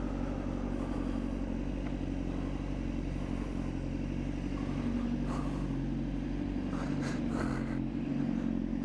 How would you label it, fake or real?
real